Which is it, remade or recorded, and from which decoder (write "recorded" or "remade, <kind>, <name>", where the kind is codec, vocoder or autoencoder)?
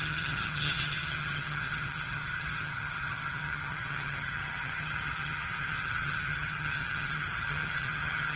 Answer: remade, vocoder, HiFi-GAN